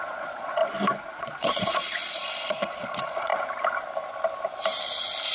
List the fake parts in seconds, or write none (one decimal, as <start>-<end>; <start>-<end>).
0.0-0.6; 1.2-3.3; 4.8-5.3